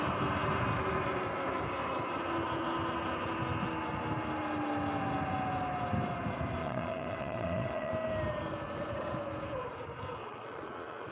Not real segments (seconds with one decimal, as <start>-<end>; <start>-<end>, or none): 6.6-7.9; 10.2-11.1